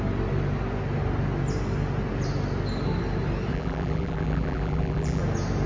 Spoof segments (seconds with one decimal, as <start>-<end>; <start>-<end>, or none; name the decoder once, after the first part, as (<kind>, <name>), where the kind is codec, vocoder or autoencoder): 3.5-5.2 (vocoder, BigVGAN v2)